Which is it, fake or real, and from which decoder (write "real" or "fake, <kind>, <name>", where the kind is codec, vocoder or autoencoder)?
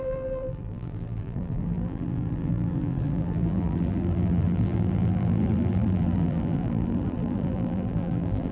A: fake, vocoder, BigVGAN v2